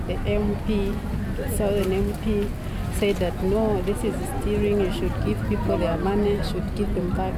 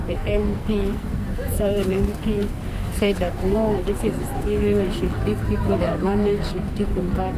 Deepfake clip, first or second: second